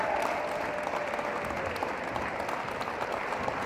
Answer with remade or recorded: recorded